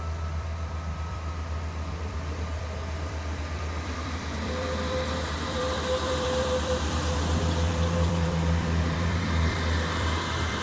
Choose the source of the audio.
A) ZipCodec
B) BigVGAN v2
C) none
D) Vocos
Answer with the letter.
B